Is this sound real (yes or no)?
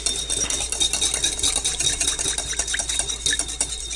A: yes